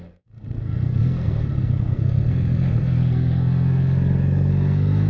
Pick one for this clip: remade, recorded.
remade